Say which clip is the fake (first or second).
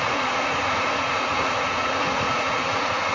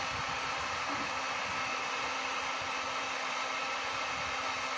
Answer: first